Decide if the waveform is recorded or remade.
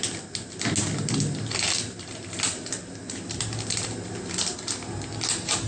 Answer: recorded